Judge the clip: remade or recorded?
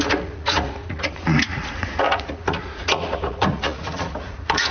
remade